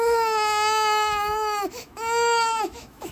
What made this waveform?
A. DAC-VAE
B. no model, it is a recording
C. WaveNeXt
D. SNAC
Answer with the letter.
A